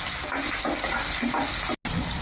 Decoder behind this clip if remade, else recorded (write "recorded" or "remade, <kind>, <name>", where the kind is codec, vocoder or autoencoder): recorded